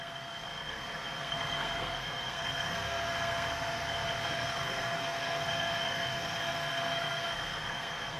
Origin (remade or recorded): remade